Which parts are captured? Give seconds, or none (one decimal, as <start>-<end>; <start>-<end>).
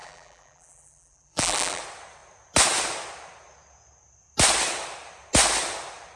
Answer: 1.8-6.2